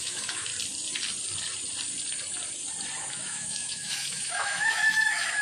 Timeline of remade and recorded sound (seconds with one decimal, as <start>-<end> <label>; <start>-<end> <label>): 0.0-0.5 remade; 0.5-3.1 recorded; 3.1-5.4 remade